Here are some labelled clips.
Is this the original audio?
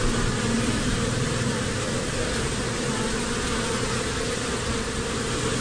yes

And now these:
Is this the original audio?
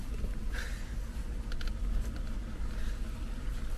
yes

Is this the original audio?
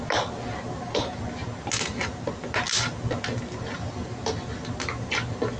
yes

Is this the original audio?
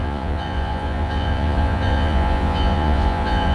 no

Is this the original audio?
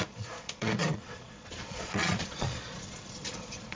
no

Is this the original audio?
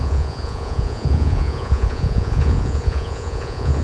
no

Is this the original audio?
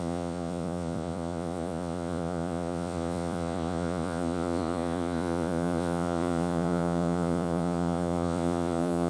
no